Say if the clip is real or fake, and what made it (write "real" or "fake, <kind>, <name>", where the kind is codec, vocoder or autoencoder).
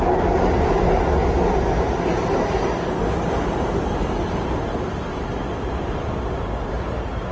real